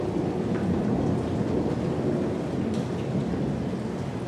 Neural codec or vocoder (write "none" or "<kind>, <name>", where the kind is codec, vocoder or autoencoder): none